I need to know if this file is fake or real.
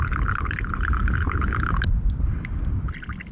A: real